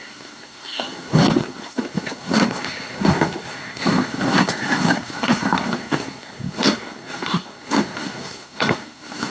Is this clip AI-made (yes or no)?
yes